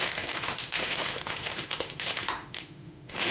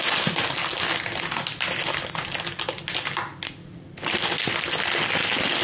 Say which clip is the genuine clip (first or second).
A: second